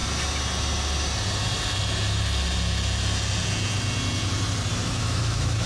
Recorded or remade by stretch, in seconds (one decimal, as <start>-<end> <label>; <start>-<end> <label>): 0.0-4.8 recorded; 4.8-5.7 remade